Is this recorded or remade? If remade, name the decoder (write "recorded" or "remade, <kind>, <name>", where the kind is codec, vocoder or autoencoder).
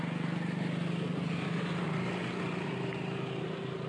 recorded